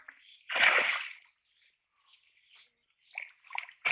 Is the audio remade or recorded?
recorded